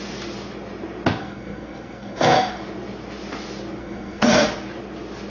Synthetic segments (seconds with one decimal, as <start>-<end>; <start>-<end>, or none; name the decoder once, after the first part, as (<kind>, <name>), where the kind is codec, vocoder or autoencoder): 1.2-2.6 (codec, SNAC); 3.8-4.5